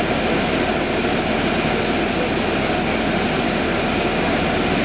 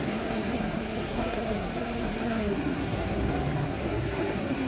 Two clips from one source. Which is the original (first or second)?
first